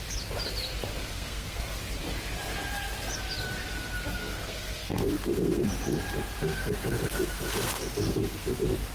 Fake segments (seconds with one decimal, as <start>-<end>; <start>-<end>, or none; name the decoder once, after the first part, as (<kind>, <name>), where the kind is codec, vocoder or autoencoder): 1.0-1.8 (codec, SNAC); 4.2-5.6; 6.4-8.5